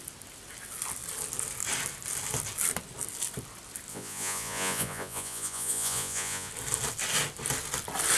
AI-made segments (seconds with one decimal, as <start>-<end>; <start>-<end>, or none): 3.9-6.5